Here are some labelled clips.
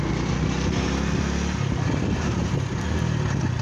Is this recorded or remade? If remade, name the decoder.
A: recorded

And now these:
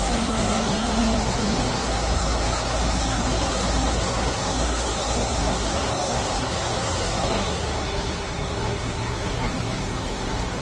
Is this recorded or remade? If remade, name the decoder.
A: remade, codec, SNAC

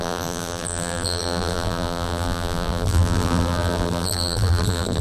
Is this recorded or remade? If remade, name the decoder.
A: remade, vocoder, BigVGAN v2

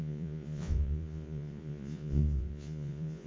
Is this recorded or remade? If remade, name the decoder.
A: remade, vocoder, Vocos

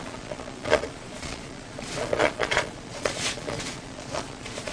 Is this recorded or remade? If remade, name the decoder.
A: remade, vocoder, Vocos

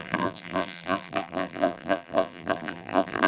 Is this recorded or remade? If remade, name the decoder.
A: remade, vocoder, BigVGAN v2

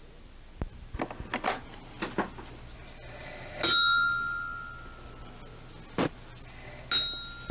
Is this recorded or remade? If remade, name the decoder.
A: recorded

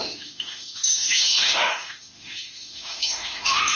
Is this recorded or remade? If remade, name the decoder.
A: remade, autoencoder, DAC-VAE